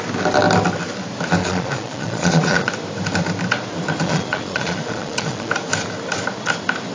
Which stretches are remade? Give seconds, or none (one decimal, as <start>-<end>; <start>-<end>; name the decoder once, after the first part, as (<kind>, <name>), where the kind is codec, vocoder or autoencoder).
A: 1.4-2.7 (vocoder, Vocos); 4.0-5.5